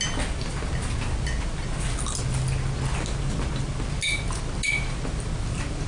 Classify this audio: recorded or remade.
recorded